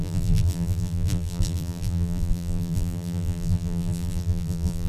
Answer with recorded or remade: remade